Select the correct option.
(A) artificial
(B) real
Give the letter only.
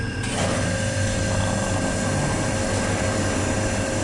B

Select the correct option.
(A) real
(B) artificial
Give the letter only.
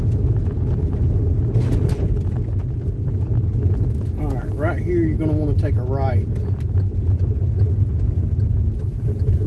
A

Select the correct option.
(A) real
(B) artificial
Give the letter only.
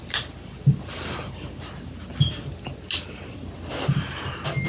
A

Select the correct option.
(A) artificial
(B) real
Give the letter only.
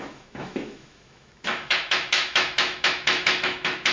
A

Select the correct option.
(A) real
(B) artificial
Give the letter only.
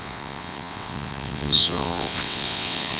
B